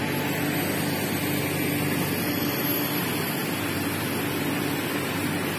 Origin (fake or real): real